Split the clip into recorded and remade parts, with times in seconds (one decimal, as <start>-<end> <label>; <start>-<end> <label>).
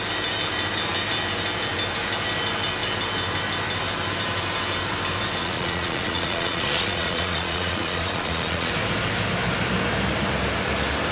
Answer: 0.0-5.4 recorded; 5.4-8.7 remade; 8.7-11.1 recorded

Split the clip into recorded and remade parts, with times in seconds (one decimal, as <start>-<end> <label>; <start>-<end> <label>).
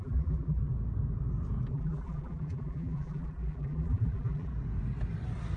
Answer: 0.0-0.6 remade; 0.6-1.7 recorded; 1.7-4.5 remade; 4.5-5.6 recorded